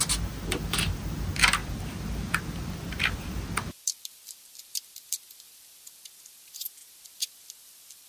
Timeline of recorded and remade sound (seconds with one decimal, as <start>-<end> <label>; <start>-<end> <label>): 0.0-1.6 recorded; 1.6-5.6 remade; 5.6-8.1 recorded